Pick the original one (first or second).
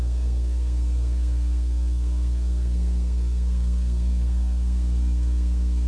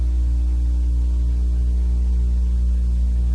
second